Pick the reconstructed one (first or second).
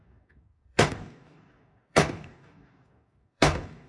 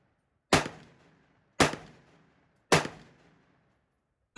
first